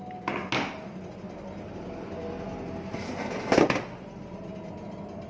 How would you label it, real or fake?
real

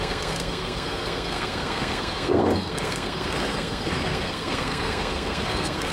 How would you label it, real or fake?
fake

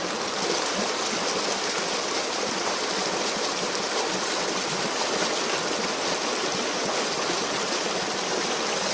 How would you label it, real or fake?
real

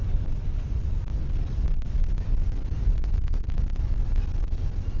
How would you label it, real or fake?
real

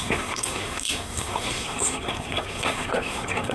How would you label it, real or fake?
fake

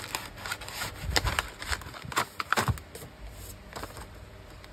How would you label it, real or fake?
real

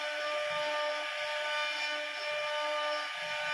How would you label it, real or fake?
real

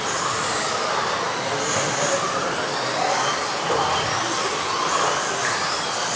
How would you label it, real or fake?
real